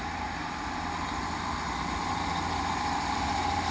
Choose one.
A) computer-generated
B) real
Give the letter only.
B